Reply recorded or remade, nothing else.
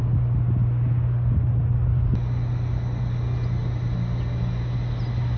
recorded